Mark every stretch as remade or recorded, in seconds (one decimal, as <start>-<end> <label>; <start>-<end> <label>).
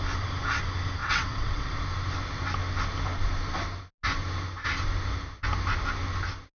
0.0-1.0 recorded; 1.0-1.7 remade; 1.7-6.6 recorded